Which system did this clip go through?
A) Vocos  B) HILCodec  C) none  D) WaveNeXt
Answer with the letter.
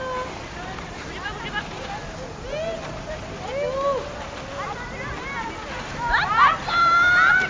C